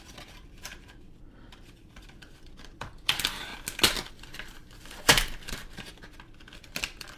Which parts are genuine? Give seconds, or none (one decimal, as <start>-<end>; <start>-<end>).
3.5-4.1